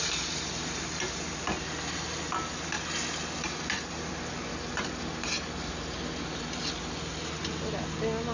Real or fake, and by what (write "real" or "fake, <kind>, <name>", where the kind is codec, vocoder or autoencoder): real